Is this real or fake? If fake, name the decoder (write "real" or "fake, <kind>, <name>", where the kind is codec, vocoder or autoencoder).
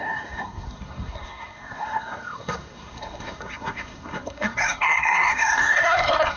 fake, codec, SNAC